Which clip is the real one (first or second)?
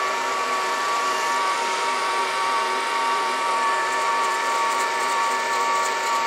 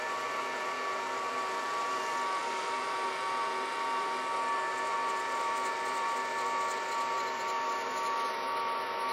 second